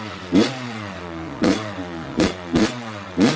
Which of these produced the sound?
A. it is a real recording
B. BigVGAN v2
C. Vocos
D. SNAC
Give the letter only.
C